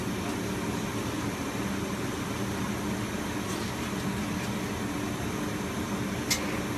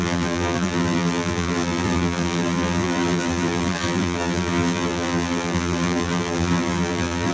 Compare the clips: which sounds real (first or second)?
first